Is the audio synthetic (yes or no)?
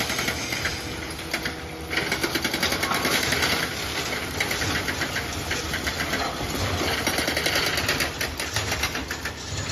no